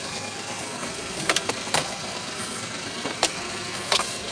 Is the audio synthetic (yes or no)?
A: yes